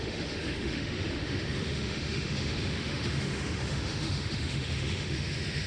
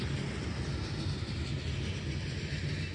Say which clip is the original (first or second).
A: second